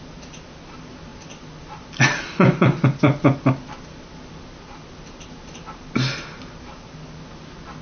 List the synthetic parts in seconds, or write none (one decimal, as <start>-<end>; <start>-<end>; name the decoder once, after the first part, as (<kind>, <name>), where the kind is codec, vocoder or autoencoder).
none